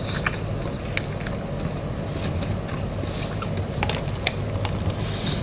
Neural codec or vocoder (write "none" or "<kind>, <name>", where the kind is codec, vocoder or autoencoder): none